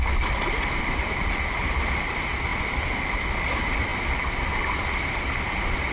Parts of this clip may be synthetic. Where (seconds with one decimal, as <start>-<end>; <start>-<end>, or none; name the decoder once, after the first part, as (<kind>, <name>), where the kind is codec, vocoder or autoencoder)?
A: none